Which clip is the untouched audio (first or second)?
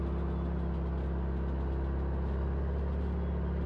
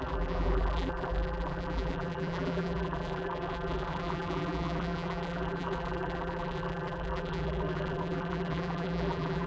first